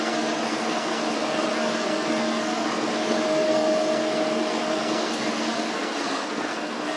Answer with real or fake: fake